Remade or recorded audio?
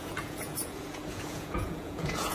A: remade